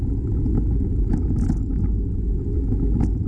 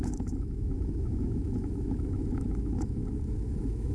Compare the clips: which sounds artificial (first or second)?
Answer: second